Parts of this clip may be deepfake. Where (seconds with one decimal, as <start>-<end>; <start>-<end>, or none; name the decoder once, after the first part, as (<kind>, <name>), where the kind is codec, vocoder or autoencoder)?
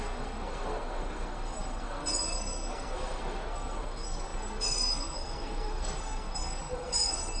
0.0-7.4 (codec, SNAC)